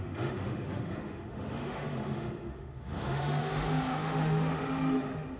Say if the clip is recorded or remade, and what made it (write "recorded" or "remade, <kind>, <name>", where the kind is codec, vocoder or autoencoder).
remade, autoencoder, DAC-VAE